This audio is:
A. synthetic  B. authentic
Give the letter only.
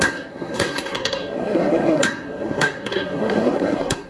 A